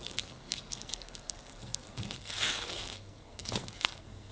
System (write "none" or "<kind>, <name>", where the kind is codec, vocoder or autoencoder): codec, SNAC